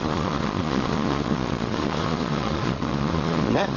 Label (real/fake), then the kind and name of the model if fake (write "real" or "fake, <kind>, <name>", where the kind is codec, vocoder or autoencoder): fake, vocoder, Vocos